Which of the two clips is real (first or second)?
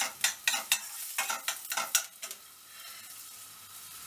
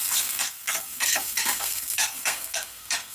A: first